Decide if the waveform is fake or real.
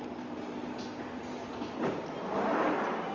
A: real